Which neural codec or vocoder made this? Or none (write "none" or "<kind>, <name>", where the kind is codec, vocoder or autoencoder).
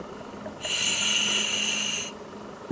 none